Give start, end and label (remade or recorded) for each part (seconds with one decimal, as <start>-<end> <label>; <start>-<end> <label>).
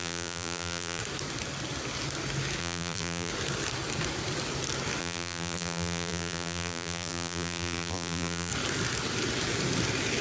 0.0-1.0 remade; 1.0-2.6 recorded; 2.6-3.3 remade; 3.3-5.0 recorded; 5.0-8.5 remade; 8.5-10.2 recorded